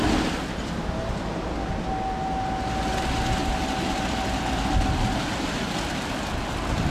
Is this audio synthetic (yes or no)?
no